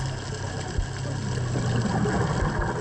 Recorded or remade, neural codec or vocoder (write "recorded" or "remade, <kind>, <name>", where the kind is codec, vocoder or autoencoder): recorded